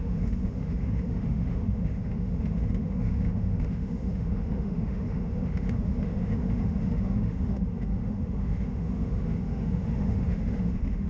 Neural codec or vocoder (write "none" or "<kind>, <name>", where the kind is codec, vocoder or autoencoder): autoencoder, DAC-VAE